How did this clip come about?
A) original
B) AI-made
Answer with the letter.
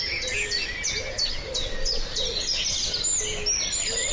A